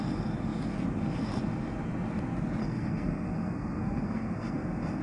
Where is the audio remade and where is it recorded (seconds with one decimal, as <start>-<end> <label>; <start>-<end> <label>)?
0.0-2.6 recorded; 2.6-5.0 remade

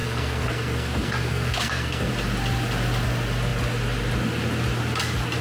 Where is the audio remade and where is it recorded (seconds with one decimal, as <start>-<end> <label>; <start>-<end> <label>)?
0.0-2.1 remade; 2.1-5.4 recorded

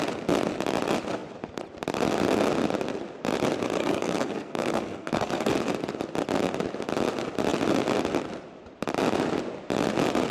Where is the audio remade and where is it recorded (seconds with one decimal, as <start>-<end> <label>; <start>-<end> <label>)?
0.0-3.8 recorded; 3.8-5.5 remade; 5.5-10.3 recorded

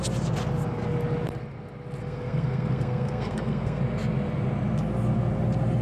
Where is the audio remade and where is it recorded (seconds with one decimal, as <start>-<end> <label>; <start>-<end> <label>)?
0.0-2.0 recorded; 2.0-3.8 remade; 3.8-5.8 recorded

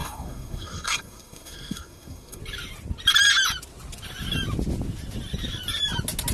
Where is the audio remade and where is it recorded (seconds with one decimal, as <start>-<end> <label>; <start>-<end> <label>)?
0.0-2.4 remade; 2.4-6.3 recorded

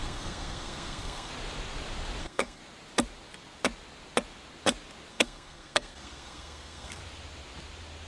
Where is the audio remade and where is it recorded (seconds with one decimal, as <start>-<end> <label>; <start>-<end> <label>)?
0.0-1.3 remade; 1.3-2.2 recorded; 2.2-2.6 remade; 2.6-5.1 recorded; 5.1-7.0 remade; 7.0-8.1 recorded

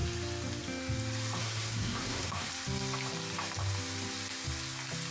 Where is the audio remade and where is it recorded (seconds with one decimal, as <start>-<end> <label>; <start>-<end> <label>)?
0.0-1.4 recorded; 1.4-2.5 remade; 2.5-5.1 recorded

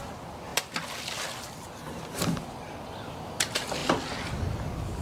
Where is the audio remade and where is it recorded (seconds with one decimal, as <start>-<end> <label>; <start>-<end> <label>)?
0.0-5.0 recorded